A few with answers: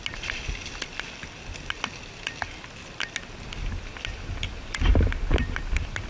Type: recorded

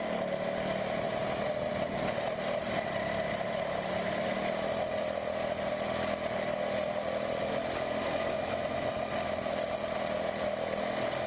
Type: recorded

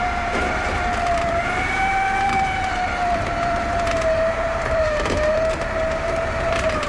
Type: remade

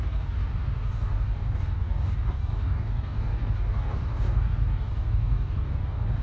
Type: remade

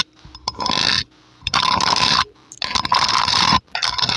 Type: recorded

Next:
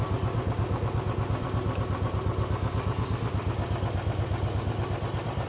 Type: remade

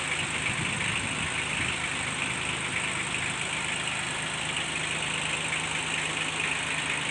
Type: recorded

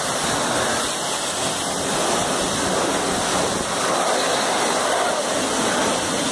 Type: recorded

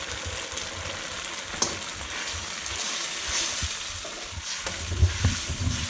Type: recorded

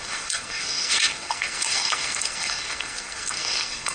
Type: remade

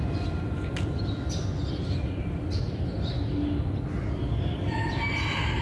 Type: recorded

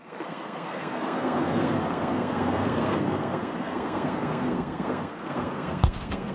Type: remade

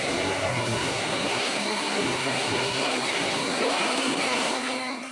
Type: remade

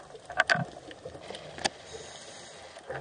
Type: recorded